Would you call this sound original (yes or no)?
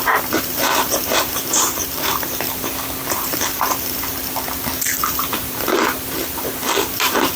no